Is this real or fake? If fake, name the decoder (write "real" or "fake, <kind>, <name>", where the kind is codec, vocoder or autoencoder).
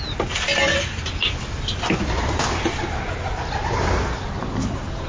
real